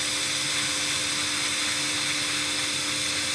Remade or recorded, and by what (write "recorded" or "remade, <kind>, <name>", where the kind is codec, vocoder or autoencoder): recorded